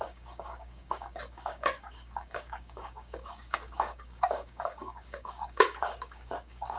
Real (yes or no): no